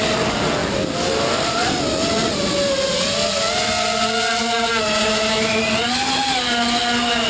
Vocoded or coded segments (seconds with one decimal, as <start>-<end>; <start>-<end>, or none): 5.0-5.6